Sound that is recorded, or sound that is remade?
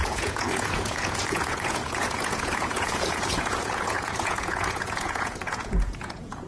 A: remade